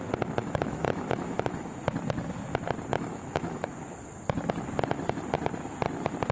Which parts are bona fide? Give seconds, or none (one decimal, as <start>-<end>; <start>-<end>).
0.0-0.4; 1.8-2.9; 3.7-6.3